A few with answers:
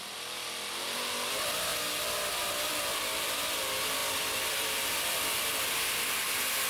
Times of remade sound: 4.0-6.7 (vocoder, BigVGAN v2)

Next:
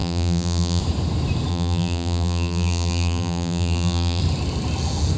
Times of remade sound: 0.0-0.8 (vocoder, BigVGAN v2); 1.5-4.2

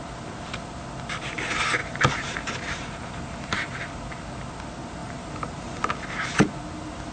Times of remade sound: 1.8-3.8 (vocoder, BigVGAN v2); 5.0-5.9

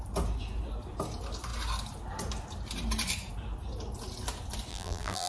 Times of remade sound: 4.7-5.3 (vocoder, BigVGAN v2)

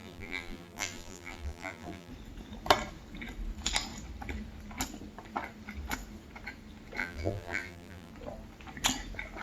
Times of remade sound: 0.0-2.1 (vocoder, BigVGAN v2); 7.0-8.1